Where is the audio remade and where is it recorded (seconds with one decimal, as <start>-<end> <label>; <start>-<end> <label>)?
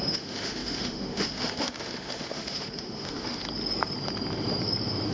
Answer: 0.0-3.4 remade; 3.4-5.1 recorded